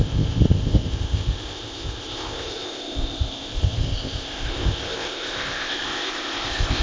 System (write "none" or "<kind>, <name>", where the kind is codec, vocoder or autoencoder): codec, ZipCodec